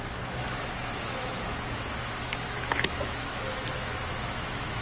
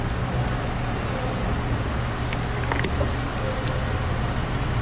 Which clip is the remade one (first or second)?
first